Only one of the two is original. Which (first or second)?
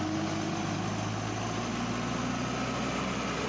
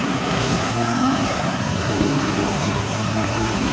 first